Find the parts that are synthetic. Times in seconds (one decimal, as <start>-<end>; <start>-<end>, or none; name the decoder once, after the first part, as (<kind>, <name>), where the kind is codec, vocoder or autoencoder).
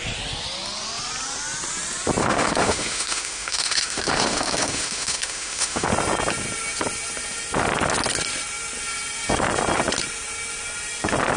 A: 2.2-5.9 (autoencoder, DAC-VAE)